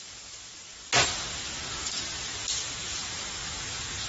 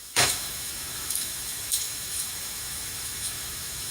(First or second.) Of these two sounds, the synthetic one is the second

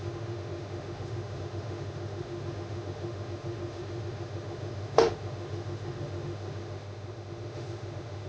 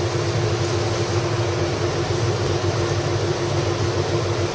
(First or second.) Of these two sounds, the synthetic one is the first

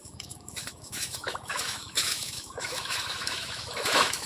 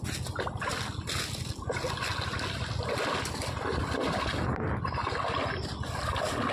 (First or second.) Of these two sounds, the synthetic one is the first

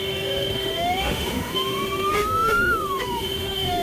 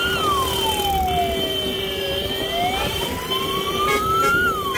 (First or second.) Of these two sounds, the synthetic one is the first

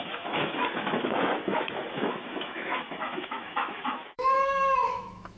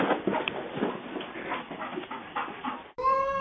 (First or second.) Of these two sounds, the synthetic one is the first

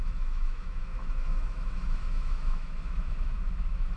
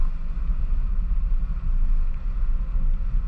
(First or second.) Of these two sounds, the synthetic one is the first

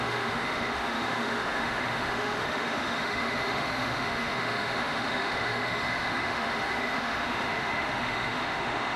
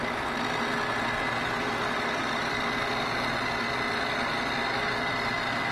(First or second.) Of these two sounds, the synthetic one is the first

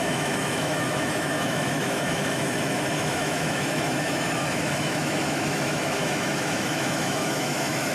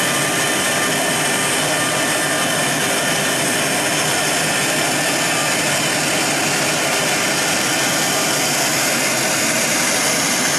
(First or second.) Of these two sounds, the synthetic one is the first